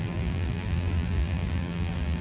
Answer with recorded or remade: remade